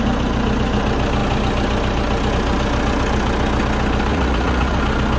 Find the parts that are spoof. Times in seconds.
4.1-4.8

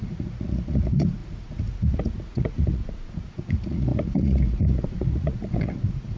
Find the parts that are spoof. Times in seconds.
0.0-6.2